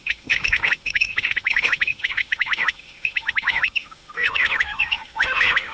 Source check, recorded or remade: remade